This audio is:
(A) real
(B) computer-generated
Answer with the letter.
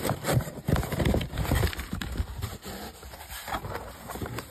A